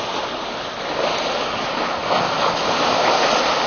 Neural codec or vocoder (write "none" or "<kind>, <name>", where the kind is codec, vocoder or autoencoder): none